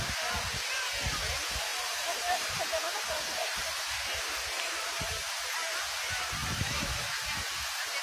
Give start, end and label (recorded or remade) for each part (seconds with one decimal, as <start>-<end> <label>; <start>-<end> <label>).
0.0-1.7 recorded; 1.7-2.6 remade; 2.6-3.4 recorded; 3.4-5.8 remade; 5.8-6.4 recorded; 6.4-7.0 remade; 7.0-8.0 recorded